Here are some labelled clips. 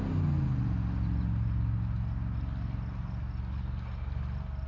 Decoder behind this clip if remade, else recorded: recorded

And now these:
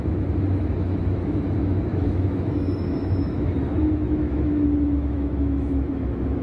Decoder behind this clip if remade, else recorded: remade, autoencoder, DAC-VAE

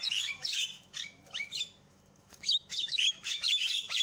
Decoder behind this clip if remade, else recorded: remade, autoencoder, DAC-VAE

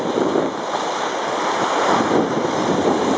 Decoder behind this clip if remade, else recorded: recorded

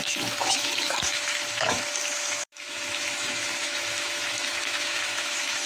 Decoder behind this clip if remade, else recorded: remade, autoencoder, DAC-VAE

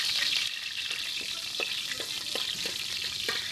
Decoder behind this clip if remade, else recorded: recorded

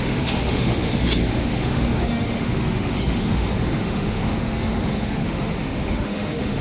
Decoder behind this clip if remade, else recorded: remade, autoencoder, DAC-VAE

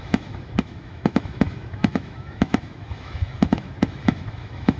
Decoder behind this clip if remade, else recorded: remade, autoencoder, DAC-VAE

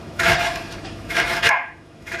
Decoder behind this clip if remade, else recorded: remade, autoencoder, DAC-VAE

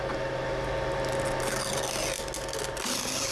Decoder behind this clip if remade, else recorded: recorded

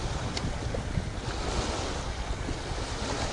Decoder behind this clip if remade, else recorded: recorded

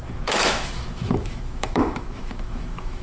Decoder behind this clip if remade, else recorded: remade, autoencoder, DAC-VAE